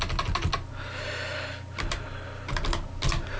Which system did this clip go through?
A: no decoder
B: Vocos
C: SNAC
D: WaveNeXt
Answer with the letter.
A